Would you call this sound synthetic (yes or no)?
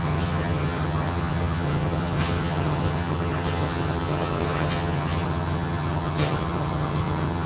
yes